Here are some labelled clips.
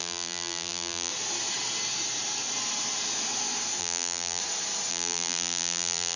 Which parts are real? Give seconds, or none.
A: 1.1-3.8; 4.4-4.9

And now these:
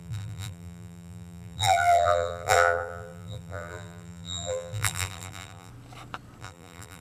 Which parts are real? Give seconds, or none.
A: 5.7-6.4

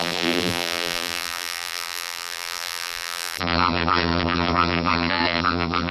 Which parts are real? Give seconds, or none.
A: none

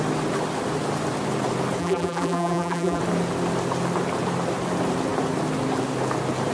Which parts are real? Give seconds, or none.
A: 0.0-1.8; 3.0-6.5

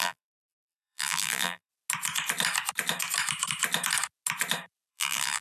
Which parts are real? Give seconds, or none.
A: 1.7-4.9